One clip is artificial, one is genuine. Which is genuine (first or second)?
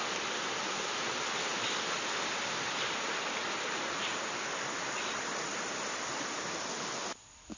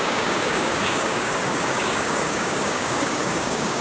first